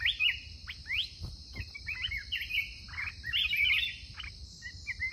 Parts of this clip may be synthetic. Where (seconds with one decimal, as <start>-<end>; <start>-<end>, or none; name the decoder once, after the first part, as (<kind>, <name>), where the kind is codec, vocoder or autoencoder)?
none